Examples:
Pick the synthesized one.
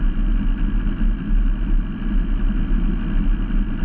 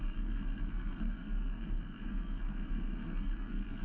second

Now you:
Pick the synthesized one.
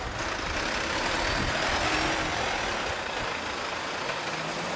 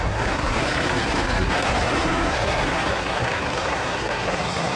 second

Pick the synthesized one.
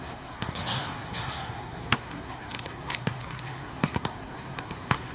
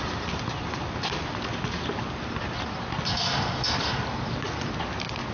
first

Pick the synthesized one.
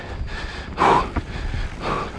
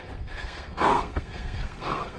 second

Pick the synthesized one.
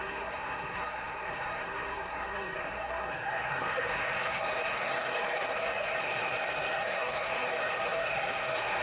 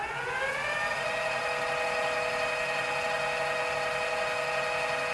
first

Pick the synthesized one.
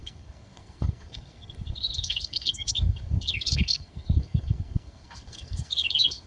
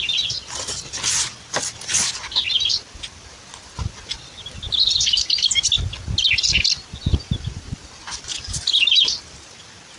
first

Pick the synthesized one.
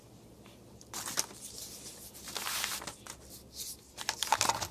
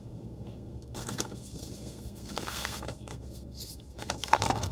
second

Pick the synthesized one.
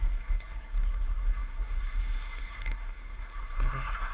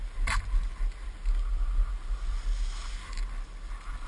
first